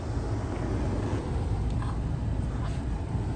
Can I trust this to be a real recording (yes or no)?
yes